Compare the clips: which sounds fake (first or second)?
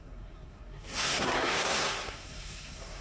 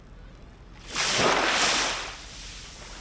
first